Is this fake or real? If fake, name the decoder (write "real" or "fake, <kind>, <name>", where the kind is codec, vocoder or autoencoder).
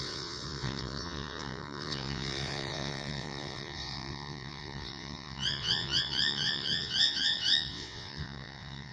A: fake, vocoder, WaveNeXt